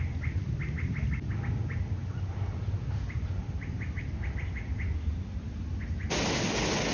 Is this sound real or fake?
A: real